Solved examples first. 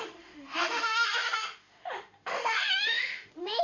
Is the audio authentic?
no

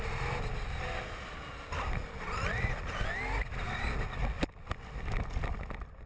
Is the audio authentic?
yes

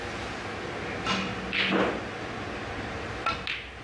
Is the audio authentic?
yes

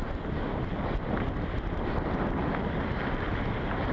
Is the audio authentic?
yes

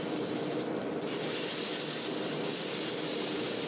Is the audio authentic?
no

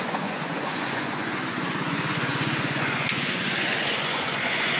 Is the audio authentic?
no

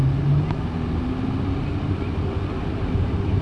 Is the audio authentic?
yes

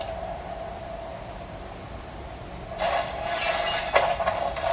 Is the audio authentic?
yes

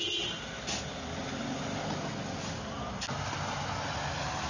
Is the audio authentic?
yes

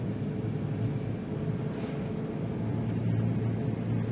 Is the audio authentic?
yes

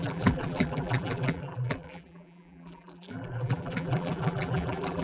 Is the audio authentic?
no